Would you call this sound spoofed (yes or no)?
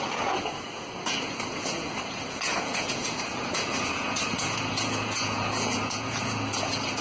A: yes